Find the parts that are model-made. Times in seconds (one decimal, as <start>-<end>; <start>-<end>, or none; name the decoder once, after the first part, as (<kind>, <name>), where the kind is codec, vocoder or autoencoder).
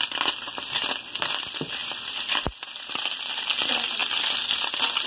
1.8-3.4 (vocoder, BigVGAN v2); 4.0-4.6